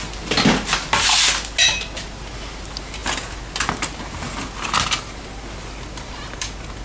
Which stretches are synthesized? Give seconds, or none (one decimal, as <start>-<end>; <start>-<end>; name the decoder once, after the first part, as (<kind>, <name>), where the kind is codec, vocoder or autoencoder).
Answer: none